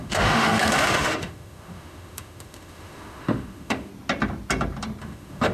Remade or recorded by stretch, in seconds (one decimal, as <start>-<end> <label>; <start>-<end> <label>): 0.0-3.9 remade; 3.9-5.0 recorded; 5.0-5.5 remade